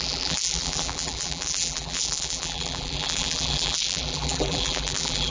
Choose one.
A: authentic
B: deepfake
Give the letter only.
B